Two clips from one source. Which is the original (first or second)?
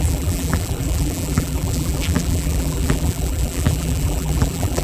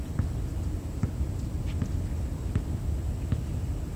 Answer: second